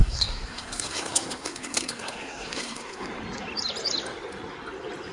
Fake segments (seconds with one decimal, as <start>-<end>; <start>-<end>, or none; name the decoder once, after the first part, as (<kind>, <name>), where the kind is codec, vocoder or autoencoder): 0.0-3.1 (codec, SNAC)